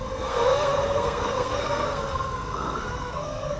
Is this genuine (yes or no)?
no